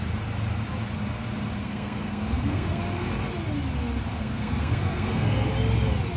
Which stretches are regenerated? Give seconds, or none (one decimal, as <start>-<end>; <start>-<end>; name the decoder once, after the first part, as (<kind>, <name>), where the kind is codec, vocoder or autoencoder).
1.6-2.8 (codec, SNAC); 4.2-5.5